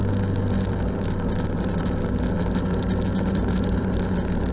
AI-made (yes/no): no